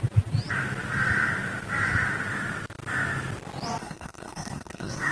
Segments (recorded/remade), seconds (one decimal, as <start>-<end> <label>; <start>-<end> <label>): 0.0-3.8 recorded; 3.8-5.1 remade

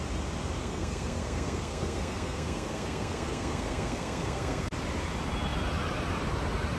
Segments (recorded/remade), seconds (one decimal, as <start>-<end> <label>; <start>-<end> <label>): 0.0-0.6 recorded; 0.6-4.7 remade; 4.7-6.8 recorded

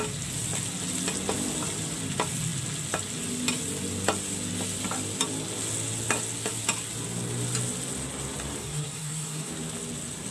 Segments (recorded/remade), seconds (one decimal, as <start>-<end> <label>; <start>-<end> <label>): 0.0-8.6 recorded; 8.6-9.5 remade; 9.5-10.3 recorded

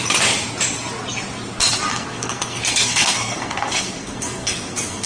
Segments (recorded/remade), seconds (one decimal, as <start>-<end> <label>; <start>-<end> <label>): 0.0-1.9 recorded; 1.9-5.1 remade

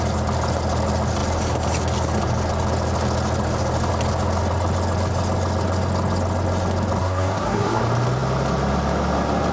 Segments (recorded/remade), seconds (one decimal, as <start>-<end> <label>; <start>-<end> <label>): 0.0-7.0 recorded; 7.0-7.8 remade; 7.8-9.5 recorded

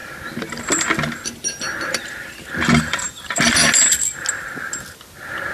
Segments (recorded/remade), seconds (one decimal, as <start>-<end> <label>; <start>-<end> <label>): 0.0-5.5 recorded

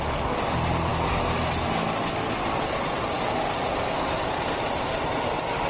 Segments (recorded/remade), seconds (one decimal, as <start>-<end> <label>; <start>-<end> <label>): 0.0-5.7 recorded